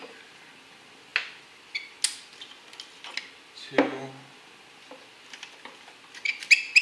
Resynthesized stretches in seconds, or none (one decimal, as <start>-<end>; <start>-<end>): none